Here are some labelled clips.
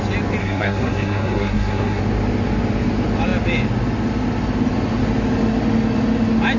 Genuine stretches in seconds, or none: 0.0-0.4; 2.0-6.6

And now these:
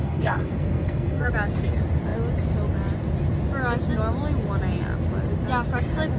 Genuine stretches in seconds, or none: 1.3-6.2

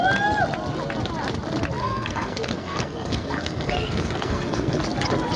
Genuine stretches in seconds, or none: 0.0-1.8; 4.8-5.4

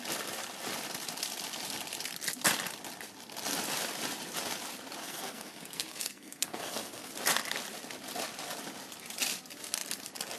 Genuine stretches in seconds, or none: 0.0-5.0; 7.1-10.4

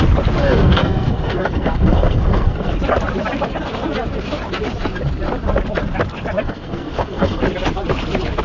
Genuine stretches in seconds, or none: 0.0-0.4; 2.7-6.4; 7.4-8.4

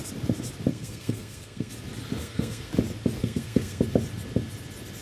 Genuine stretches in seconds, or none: 0.0-0.7; 1.7-2.2; 2.7-3.2; 3.8-5.0

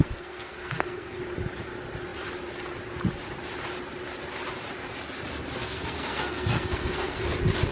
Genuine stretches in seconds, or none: 1.2-5.6; 7.2-7.7

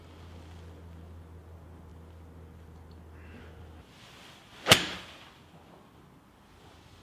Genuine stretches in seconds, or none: 0.0-7.0